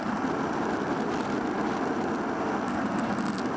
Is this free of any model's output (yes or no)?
yes